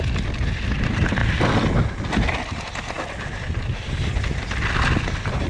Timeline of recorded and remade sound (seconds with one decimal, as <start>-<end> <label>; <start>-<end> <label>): 0.0-5.5 recorded